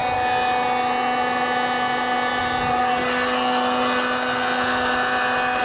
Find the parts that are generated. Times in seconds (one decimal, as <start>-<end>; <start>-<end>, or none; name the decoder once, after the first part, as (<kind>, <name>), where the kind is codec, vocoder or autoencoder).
2.4-3.0 (vocoder, BigVGAN v2)